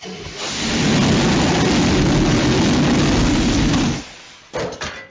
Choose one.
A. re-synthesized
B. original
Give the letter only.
B